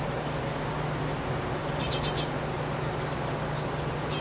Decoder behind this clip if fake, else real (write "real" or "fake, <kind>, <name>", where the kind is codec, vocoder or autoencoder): real